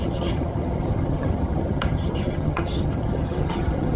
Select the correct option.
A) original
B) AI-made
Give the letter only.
B